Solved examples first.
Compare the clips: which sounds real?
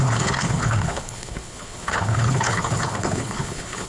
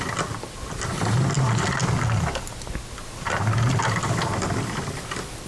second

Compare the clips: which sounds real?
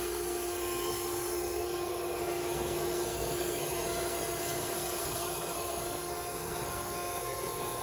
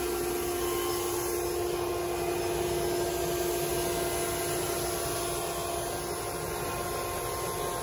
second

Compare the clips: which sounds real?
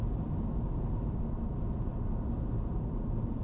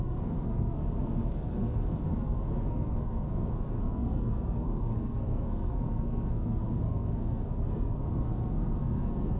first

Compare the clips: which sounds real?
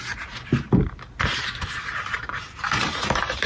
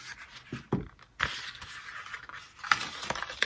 second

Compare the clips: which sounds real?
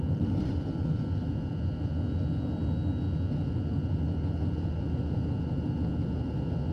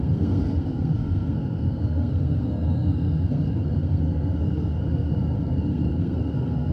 first